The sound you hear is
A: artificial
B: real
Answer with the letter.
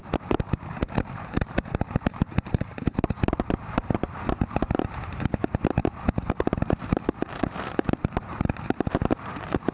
A